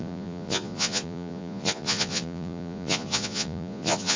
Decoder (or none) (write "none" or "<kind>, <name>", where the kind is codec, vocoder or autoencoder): vocoder, Vocos